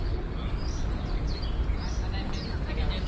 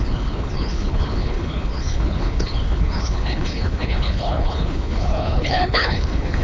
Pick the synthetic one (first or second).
second